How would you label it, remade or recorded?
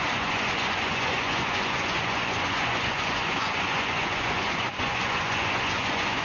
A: remade